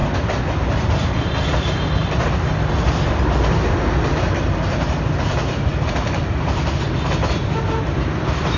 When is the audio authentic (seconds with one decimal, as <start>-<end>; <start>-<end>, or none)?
0.0-8.6